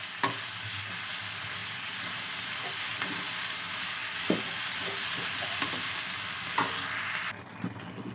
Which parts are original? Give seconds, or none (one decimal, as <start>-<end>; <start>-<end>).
0.0-1.6; 2.3-2.9; 3.5-8.1